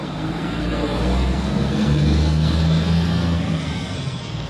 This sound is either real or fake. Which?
fake